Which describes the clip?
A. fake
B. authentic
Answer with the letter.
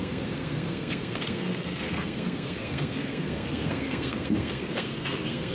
A